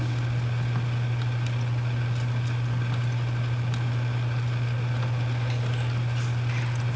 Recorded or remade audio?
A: recorded